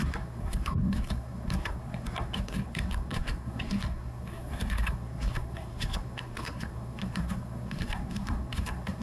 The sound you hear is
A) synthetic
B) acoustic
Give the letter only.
A